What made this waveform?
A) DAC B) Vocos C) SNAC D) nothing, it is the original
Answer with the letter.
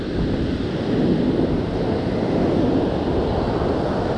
D